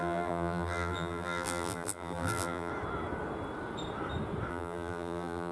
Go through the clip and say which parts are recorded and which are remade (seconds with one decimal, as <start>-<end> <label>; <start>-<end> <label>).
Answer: 0.0-2.7 remade; 2.7-4.5 recorded; 4.5-5.5 remade